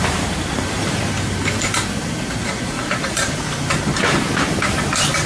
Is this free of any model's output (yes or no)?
no